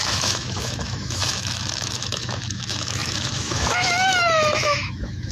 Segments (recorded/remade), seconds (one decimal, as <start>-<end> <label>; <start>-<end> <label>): 0.0-5.3 remade